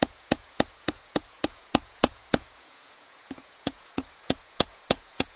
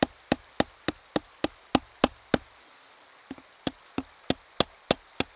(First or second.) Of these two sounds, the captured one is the second